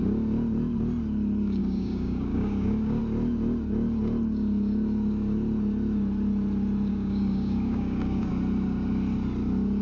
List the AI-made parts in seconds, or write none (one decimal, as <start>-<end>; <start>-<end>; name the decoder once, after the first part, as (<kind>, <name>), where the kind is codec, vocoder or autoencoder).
1.6-3.0 (codec, DAC); 6.9-8.3